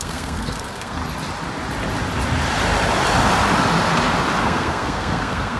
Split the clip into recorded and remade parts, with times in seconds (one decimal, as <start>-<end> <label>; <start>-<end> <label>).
0.0-1.0 remade; 1.0-4.4 recorded; 4.4-5.6 remade

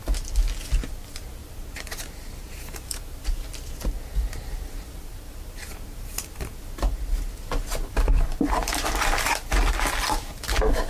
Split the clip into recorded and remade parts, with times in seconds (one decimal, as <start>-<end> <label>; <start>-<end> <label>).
0.0-1.4 recorded; 1.4-6.5 remade; 6.5-10.9 recorded

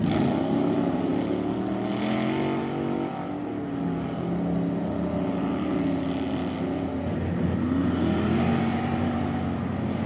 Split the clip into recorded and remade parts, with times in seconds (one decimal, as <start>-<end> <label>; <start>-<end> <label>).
0.0-10.1 recorded

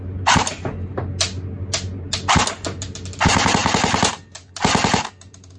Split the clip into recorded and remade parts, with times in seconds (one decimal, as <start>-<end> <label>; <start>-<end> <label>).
0.0-5.6 recorded